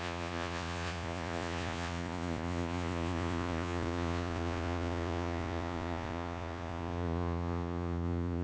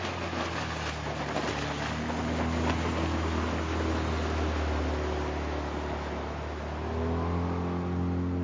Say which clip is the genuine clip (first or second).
second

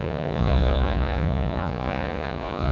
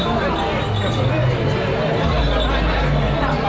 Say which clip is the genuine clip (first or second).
second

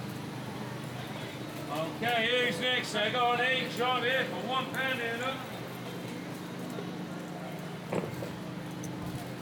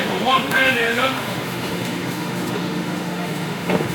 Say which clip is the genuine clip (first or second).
first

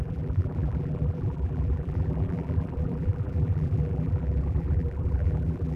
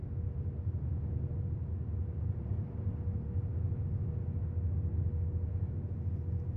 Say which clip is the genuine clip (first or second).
second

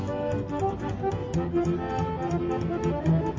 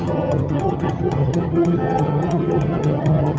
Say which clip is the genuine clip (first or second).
first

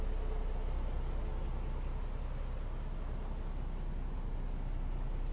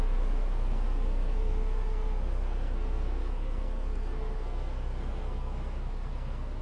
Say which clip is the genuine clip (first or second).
first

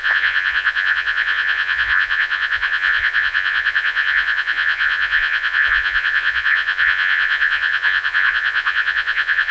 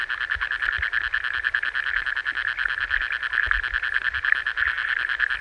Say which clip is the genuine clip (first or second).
second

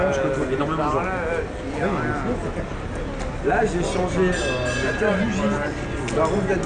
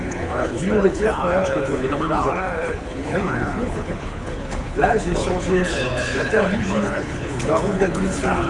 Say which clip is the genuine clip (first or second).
first